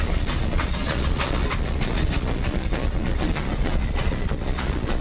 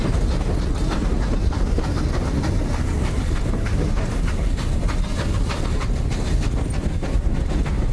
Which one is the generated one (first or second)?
first